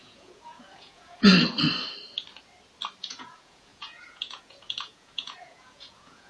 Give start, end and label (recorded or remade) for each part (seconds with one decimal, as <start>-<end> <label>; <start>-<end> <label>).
0.0-1.3 remade; 1.3-3.0 recorded; 3.0-6.3 remade